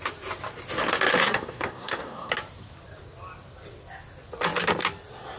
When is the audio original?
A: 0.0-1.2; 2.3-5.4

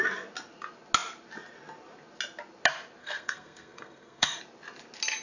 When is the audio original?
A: 0.0-3.0; 4.4-5.2

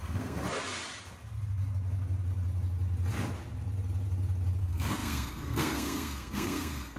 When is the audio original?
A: 0.4-4.6

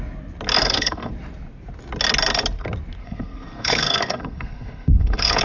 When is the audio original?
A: 0.0-0.6; 1.1-3.0